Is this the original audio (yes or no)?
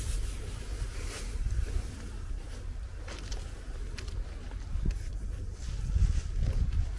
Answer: yes